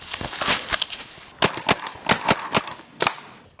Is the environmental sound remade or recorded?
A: recorded